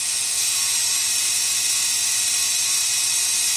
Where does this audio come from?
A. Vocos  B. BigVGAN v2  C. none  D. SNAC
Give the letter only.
B